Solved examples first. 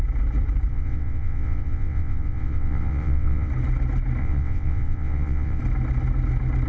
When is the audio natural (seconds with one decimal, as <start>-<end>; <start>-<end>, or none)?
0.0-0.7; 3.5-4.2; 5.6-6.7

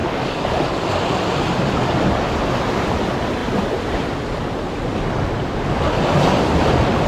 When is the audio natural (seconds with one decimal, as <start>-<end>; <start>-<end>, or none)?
0.6-7.1

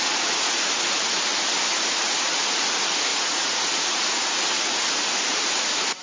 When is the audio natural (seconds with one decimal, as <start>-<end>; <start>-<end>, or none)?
1.3-1.8